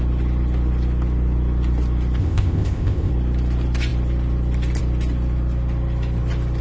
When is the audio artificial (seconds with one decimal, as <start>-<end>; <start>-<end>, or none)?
2.2-3.1

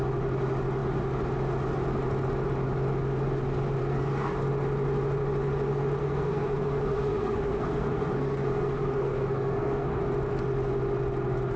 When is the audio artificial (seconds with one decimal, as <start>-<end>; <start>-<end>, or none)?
3.8-4.3; 6.0-10.0